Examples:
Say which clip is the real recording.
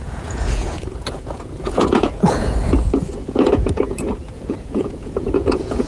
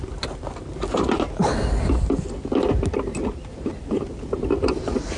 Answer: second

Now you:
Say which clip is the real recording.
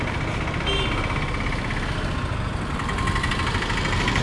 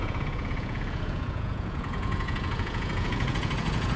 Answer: first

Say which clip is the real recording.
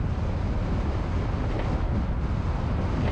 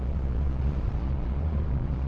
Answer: first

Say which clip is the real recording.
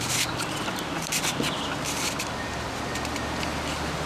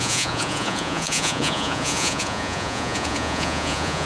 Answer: first